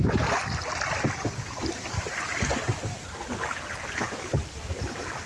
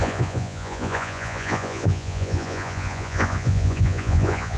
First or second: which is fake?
second